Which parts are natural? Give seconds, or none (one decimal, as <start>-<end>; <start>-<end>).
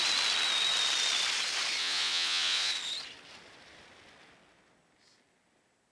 0.0-1.8; 2.7-5.9